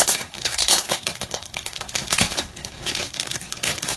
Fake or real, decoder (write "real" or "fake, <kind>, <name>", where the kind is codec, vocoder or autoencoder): fake, codec, SNAC